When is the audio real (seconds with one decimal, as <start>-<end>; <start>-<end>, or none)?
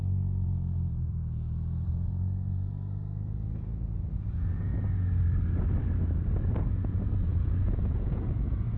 4.7-6.6